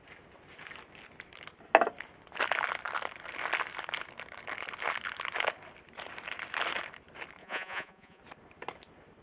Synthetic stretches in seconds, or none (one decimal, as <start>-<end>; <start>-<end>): 7.4-8.2